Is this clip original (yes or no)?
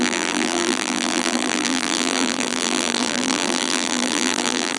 no